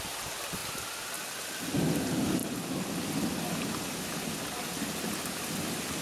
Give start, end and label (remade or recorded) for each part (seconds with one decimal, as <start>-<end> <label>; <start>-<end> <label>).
0.0-6.0 recorded